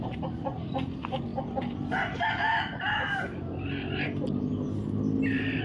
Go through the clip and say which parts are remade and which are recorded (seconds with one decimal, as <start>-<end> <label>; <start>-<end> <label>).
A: 0.0-1.3 recorded; 1.3-3.3 remade; 3.3-5.6 recorded